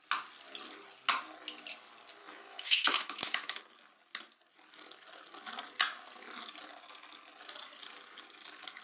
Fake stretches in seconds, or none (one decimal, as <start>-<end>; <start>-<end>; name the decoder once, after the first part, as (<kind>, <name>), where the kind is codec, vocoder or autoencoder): 2.2-3.6 (autoencoder, DAC-VAE)